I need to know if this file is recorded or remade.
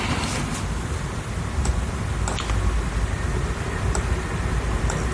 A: recorded